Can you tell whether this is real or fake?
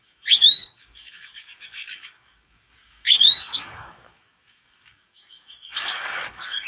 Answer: fake